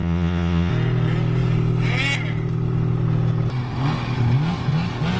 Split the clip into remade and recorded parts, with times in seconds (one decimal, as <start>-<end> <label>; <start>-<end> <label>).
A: 0.0-0.7 remade; 0.7-5.2 recorded